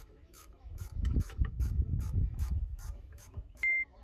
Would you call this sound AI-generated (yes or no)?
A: yes